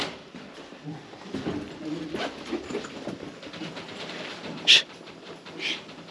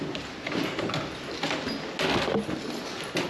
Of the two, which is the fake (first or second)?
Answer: first